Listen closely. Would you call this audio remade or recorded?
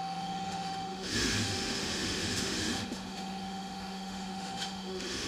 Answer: remade